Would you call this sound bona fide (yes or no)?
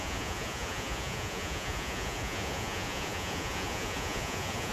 no